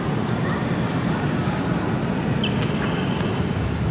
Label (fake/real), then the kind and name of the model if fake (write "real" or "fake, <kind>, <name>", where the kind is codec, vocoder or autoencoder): real